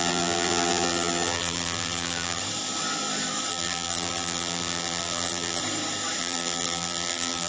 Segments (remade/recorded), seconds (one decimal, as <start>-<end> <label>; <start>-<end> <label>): 0.0-2.4 remade; 2.4-3.5 recorded; 3.5-5.6 remade; 5.6-6.2 recorded; 6.2-7.5 remade